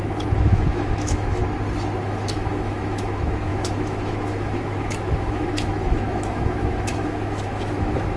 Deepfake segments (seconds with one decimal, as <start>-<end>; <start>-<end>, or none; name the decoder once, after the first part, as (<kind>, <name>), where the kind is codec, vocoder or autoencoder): 0.0-1.4 (autoencoder, DAC-VAE); 2.0-8.2

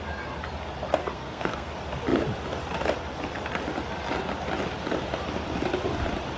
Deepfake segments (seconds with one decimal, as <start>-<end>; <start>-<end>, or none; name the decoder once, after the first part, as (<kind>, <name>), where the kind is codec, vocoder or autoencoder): 1.0-1.7 (codec, SNAC)

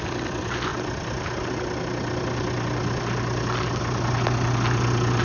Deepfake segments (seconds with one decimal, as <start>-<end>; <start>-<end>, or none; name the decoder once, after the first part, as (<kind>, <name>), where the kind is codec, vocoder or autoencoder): none

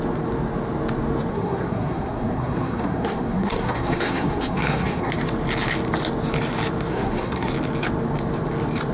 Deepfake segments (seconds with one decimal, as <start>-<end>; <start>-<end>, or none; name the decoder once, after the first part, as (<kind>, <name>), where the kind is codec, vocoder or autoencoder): 1.3-5.1 (codec, SNAC); 6.9-7.5